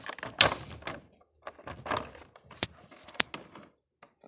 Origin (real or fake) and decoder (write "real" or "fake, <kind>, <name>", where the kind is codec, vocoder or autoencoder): real